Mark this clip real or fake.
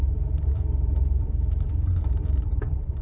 fake